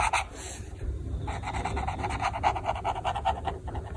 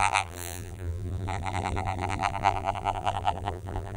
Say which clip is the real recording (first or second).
first